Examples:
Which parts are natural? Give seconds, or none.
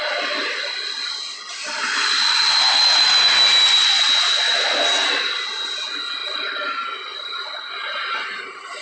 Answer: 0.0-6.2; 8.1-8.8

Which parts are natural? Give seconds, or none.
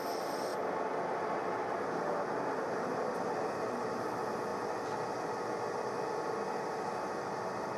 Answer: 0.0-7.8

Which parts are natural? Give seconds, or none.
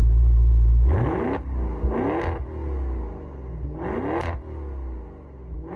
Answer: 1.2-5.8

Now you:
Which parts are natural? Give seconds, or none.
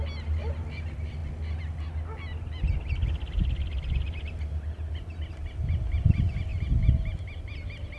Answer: 0.0-8.0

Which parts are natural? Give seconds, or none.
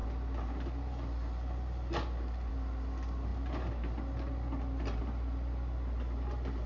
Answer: 0.0-6.7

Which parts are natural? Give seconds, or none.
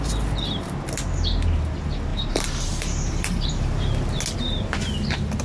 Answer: 0.0-2.1; 3.8-5.4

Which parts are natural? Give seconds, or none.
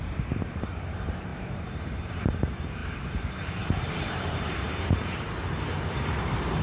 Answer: none